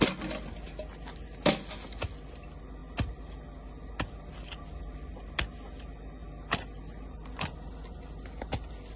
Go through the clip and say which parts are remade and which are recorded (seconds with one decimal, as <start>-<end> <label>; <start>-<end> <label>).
0.0-9.0 recorded

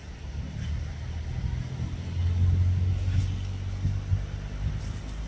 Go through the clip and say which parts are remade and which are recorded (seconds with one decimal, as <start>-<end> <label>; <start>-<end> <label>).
0.0-5.3 recorded

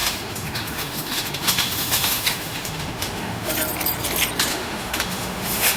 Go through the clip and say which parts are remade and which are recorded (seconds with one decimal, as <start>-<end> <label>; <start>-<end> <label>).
0.0-3.5 remade; 3.5-4.5 recorded; 4.5-5.8 remade

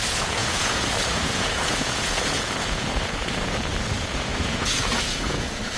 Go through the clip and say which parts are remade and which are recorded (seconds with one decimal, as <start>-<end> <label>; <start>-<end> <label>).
0.0-5.8 remade

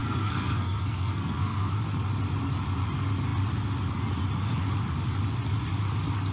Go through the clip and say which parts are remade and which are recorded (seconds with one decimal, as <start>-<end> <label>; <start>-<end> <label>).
0.0-1.7 remade; 1.7-6.3 recorded